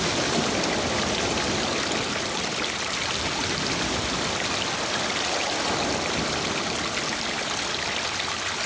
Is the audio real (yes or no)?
yes